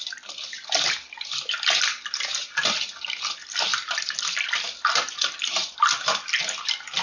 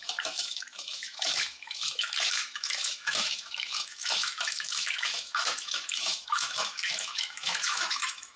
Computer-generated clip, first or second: second